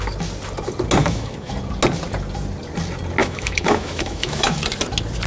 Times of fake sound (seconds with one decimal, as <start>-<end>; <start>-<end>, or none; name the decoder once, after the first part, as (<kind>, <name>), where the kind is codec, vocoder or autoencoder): 1.0-1.5 (autoencoder, DAC-VAE); 3.2-4.6